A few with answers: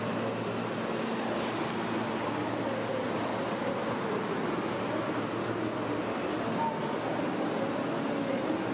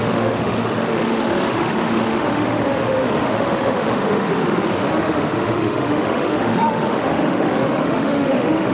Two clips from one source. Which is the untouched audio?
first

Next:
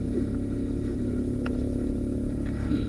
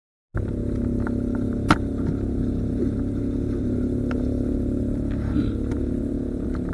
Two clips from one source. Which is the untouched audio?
second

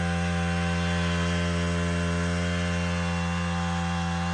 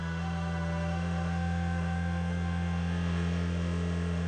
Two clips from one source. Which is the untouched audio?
first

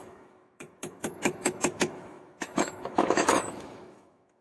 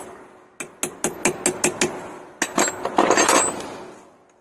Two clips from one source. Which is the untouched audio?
second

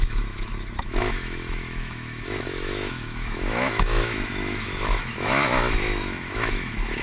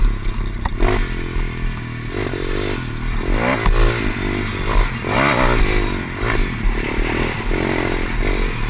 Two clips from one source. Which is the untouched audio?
second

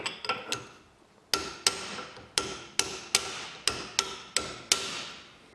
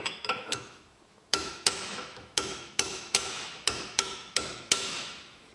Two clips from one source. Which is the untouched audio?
first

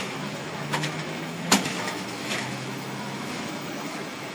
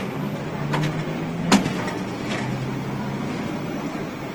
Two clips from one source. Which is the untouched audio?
second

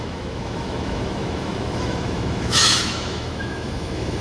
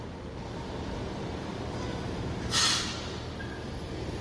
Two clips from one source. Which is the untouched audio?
second